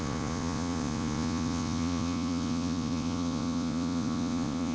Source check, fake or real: fake